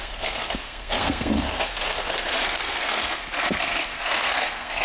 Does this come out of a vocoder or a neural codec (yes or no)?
yes